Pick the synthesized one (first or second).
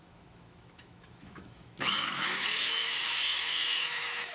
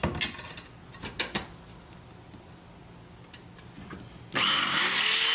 first